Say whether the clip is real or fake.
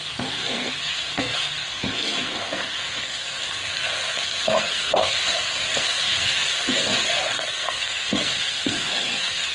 fake